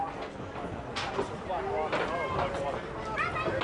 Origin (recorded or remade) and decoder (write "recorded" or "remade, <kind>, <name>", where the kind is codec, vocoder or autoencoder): recorded